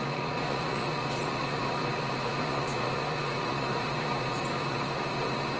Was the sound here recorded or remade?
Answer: remade